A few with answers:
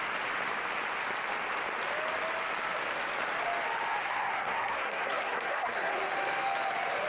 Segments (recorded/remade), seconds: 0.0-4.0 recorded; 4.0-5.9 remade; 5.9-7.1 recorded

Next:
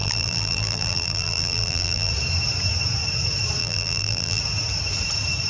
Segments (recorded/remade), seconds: 0.0-2.1 remade; 2.1-3.6 recorded; 3.6-4.4 remade; 4.4-5.5 recorded